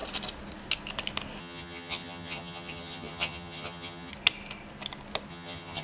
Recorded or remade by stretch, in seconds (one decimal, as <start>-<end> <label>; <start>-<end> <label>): 0.0-1.4 recorded; 1.4-4.1 remade; 4.1-5.3 recorded; 5.3-5.8 remade